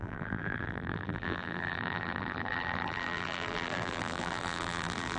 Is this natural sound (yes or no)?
no